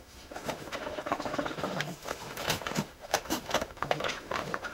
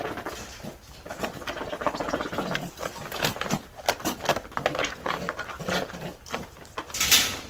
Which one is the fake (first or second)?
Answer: first